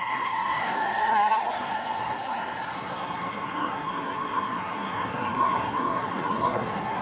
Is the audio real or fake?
fake